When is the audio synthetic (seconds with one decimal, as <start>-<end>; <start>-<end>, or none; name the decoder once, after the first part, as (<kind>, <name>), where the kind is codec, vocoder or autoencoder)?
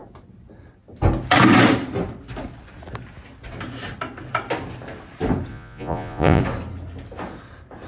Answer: 5.5-6.4 (vocoder, Vocos)